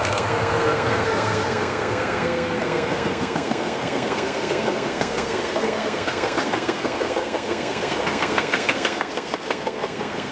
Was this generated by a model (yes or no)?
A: yes